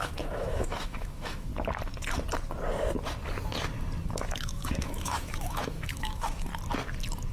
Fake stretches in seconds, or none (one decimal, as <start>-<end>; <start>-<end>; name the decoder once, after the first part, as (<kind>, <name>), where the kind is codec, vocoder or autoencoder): 0.0-1.5 (autoencoder, DAC-VAE); 4.1-6.5